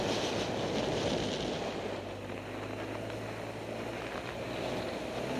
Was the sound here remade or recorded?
recorded